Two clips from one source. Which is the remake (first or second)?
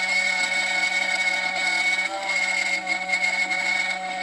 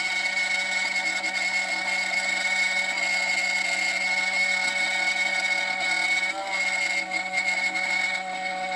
first